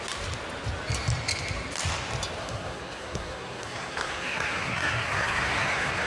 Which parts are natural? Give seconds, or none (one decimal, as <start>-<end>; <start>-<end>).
0.0-2.4